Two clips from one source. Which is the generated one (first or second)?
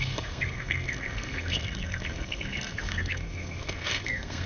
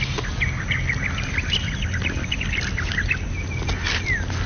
first